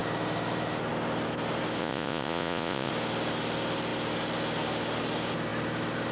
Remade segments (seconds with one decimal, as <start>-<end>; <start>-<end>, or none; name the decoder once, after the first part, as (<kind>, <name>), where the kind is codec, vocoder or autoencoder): 1.8-2.9 (vocoder, Vocos)